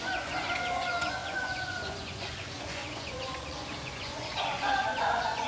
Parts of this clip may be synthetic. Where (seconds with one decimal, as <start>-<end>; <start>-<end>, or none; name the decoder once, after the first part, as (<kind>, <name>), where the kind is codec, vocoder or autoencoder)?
0.0-5.5 (vocoder, Vocos)